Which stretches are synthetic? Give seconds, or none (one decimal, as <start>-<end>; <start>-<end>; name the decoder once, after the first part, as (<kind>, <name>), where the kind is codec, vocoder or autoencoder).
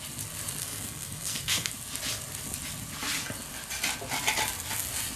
0.6-1.7 (codec, SNAC)